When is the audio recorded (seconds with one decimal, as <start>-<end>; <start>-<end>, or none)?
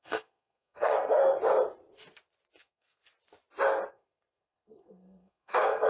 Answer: 1.2-2.6; 3.0-3.9